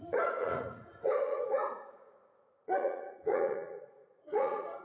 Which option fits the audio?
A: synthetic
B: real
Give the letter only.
A